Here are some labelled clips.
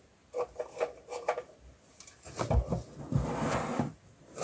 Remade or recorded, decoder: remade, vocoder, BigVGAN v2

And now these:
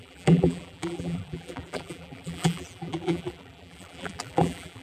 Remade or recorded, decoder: remade, vocoder, BigVGAN v2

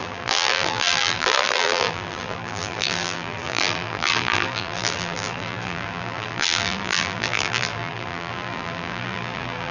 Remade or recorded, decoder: remade, vocoder, BigVGAN v2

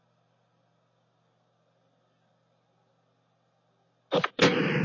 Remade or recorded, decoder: recorded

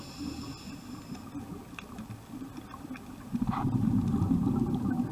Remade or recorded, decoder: recorded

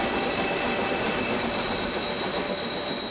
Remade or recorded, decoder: recorded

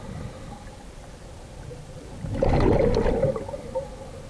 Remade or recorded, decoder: remade, vocoder, BigVGAN v2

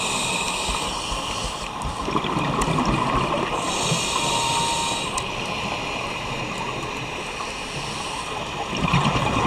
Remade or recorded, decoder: recorded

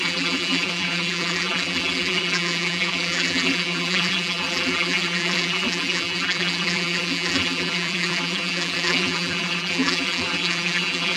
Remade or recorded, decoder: remade, vocoder, BigVGAN v2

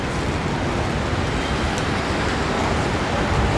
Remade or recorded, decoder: recorded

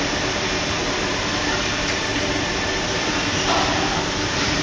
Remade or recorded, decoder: remade, vocoder, BigVGAN v2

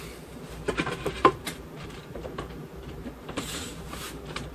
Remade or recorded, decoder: remade, vocoder, BigVGAN v2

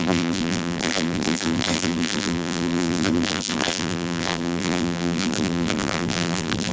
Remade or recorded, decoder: remade, vocoder, BigVGAN v2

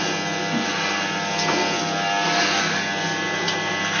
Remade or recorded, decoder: recorded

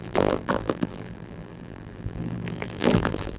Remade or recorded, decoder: remade, vocoder, BigVGAN v2